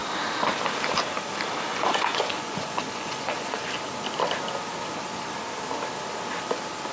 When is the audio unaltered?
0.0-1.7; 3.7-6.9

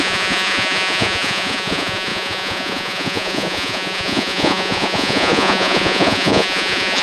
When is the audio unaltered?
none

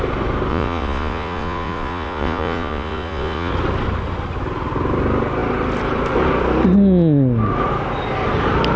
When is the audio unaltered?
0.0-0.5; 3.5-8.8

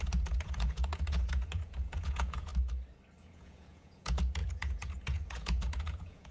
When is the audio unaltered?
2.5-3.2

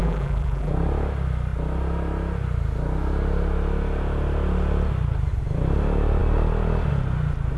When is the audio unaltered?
0.7-7.6

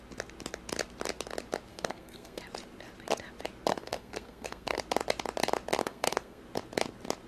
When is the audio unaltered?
0.0-1.7; 2.4-3.7; 4.8-5.8; 6.4-7.3

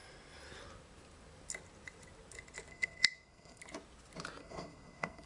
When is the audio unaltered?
0.0-2.7; 3.6-4.4

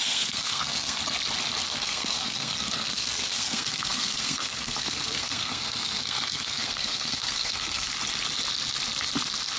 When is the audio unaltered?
1.0-1.6; 7.9-9.6